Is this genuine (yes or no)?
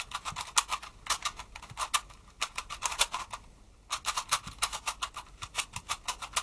yes